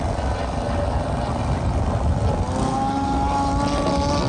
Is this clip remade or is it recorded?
recorded